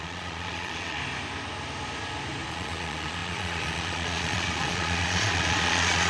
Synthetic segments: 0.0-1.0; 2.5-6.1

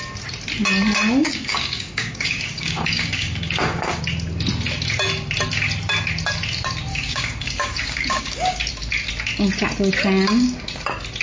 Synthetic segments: 1.2-4.0; 6.9-8.6

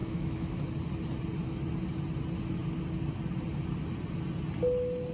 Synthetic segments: 0.0-0.6

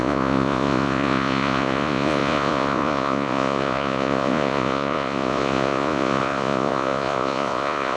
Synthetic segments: 0.0-8.0

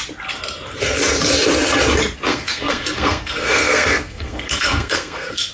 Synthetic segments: 2.3-5.5

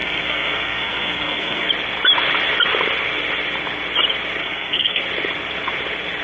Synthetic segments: 0.0-1.7; 4.4-5.0